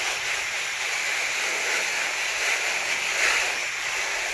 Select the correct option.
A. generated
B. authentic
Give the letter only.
B